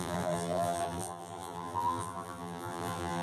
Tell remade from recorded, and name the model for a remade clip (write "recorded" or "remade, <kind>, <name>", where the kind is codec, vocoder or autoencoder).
remade, vocoder, BigVGAN v2